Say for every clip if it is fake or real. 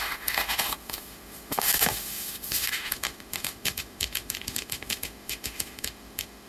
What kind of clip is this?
fake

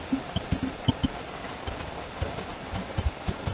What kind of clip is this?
real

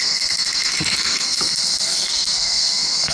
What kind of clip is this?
fake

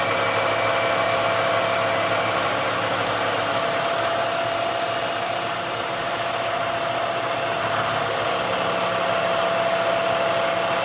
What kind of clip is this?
real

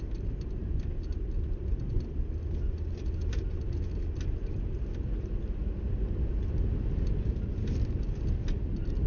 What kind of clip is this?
real